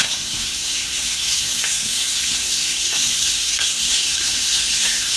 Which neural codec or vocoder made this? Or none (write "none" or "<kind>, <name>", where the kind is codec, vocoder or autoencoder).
codec, SNAC